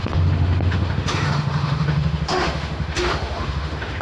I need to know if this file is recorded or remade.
remade